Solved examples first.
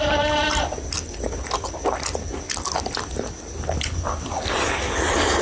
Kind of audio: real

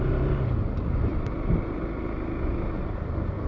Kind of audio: real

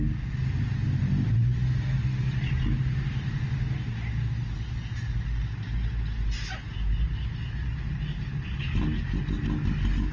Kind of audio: real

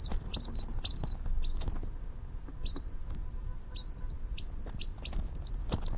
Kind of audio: real